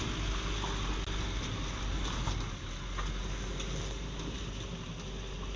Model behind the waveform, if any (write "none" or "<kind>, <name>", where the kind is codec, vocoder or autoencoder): none